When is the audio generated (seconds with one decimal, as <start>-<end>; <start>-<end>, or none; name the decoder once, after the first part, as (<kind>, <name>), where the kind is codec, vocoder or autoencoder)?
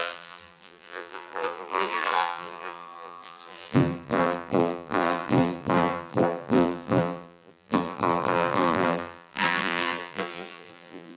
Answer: 0.0-11.2 (vocoder, BigVGAN v2)